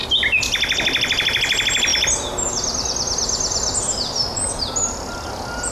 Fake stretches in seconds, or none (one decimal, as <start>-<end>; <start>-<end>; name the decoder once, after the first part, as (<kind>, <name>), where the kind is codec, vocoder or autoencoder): none